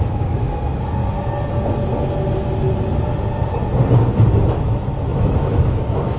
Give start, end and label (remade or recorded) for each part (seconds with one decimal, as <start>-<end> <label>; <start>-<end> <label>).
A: 0.0-1.0 remade; 1.0-4.6 recorded; 4.6-6.2 remade